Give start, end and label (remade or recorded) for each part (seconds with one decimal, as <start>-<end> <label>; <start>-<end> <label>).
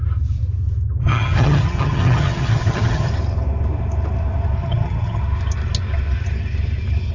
0.0-1.0 recorded; 1.0-3.1 remade; 3.1-4.6 recorded; 4.6-5.2 remade; 5.2-7.1 recorded